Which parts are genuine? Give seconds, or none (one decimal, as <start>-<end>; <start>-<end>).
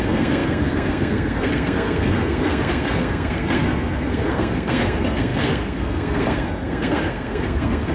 none